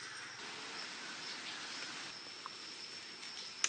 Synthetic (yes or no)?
no